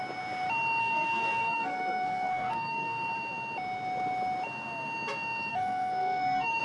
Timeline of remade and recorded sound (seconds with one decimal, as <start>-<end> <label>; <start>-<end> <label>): 0.0-0.8 recorded; 0.8-3.1 remade; 3.1-5.5 recorded; 5.5-6.6 remade